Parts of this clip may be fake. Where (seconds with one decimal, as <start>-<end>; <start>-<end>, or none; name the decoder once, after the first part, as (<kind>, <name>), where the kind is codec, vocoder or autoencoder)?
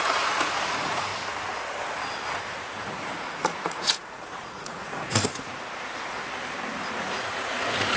0.0-1.1 (vocoder, Vocos); 2.4-6.2; 6.9-8.0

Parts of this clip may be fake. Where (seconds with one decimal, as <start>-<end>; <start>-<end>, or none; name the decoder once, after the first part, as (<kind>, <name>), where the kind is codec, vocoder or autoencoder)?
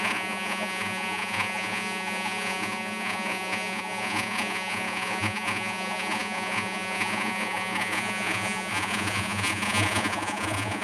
0.0-10.8 (vocoder, Vocos)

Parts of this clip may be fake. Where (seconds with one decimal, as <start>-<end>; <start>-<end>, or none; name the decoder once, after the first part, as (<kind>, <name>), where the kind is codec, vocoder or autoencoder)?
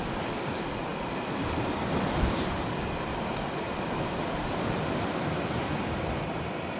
none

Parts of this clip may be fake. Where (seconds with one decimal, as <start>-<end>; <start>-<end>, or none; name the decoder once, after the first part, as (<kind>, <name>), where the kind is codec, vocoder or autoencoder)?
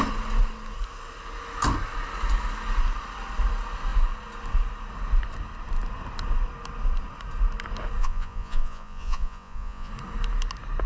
8.0-9.9 (vocoder, Vocos)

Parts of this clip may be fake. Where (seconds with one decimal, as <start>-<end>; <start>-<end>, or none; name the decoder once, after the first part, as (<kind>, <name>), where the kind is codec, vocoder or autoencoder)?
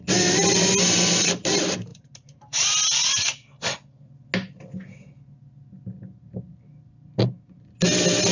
none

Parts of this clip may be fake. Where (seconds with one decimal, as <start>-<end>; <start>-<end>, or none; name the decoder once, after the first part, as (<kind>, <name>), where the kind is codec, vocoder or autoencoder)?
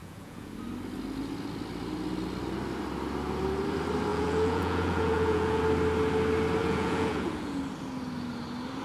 0.0-0.5 (vocoder, Vocos); 4.1-5.6; 6.6-7.6